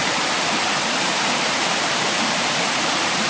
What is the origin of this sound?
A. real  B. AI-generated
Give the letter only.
B